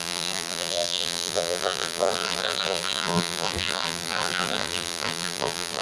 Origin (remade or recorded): remade